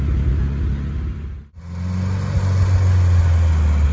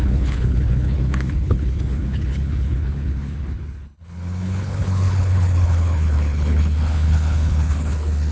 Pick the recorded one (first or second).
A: first